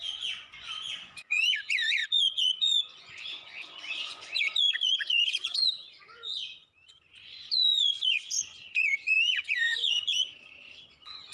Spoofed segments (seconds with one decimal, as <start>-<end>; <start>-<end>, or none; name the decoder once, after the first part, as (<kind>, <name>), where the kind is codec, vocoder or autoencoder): 0.0-11.3 (vocoder, Vocos)